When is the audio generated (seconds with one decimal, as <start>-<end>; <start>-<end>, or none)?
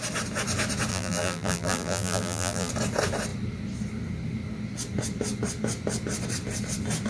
0.9-2.7